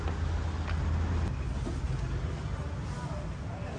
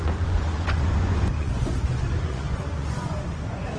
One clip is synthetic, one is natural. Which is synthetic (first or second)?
second